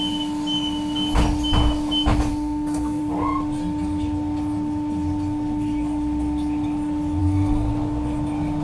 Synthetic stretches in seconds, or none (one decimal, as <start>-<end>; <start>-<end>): 2.3-3.0; 7.2-7.7